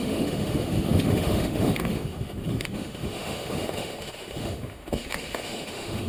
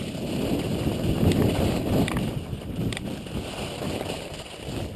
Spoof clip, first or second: first